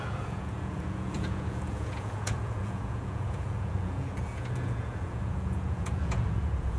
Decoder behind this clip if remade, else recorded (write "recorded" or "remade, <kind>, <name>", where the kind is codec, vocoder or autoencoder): remade, vocoder, Vocos